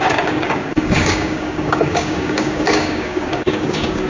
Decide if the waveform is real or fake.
fake